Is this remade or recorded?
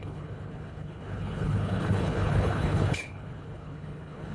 remade